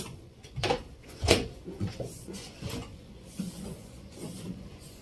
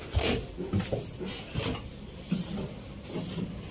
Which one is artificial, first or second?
first